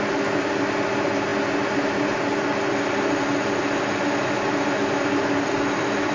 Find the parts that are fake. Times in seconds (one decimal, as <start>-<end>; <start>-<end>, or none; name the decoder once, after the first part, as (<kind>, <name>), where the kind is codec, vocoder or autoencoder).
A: none